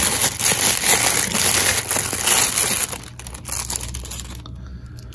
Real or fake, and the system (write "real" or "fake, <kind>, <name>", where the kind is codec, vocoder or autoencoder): real